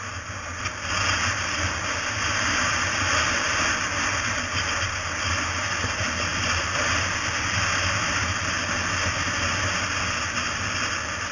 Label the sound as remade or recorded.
recorded